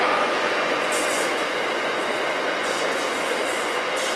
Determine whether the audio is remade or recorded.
remade